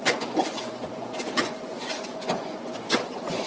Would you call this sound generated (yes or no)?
yes